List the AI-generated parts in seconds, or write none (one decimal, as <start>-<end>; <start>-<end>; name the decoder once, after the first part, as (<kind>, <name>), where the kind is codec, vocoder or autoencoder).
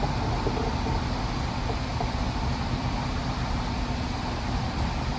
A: 1.9-4.7 (vocoder, BigVGAN v2)